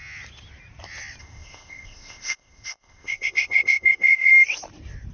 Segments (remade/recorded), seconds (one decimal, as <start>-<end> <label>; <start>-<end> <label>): 0.0-1.2 recorded; 1.2-4.3 remade; 4.3-5.1 recorded